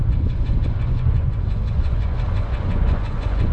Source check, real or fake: fake